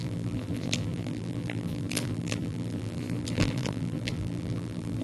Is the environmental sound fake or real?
fake